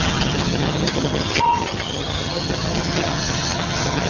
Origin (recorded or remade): remade